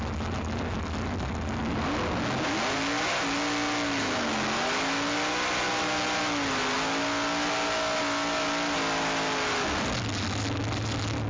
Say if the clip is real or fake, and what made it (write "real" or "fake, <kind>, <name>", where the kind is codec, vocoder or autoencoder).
real